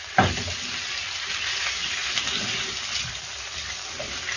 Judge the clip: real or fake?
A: real